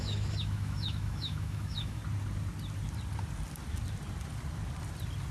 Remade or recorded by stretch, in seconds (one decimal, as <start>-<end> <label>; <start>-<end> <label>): 0.0-2.0 remade; 2.0-5.3 recorded